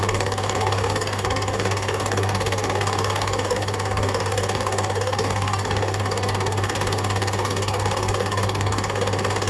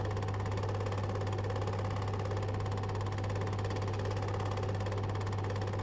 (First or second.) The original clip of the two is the second